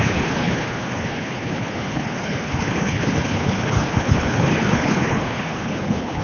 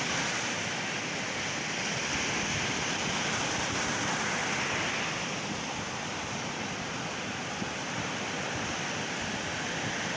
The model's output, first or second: first